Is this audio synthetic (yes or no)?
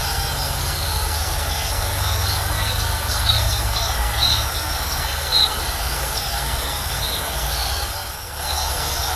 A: yes